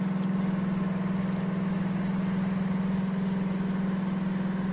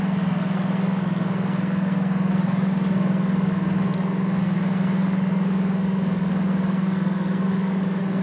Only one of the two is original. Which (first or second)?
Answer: first